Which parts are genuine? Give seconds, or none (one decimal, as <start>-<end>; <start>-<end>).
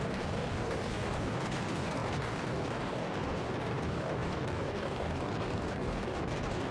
none